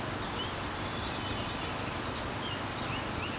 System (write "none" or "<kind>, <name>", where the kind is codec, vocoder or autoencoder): none